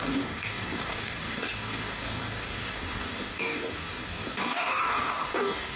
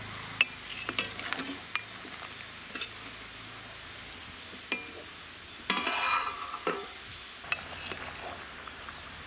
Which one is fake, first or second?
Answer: first